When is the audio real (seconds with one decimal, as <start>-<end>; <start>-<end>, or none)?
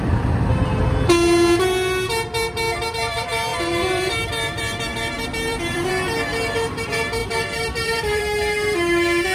0.0-3.5; 4.3-4.9; 5.9-7.2; 8.2-9.3